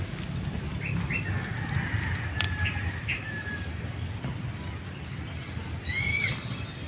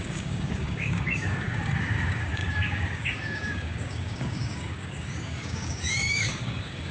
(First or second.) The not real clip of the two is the second